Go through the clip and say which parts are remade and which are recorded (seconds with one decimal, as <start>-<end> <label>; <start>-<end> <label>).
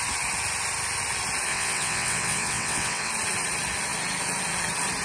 0.0-1.5 recorded; 1.5-3.1 remade; 3.1-5.0 recorded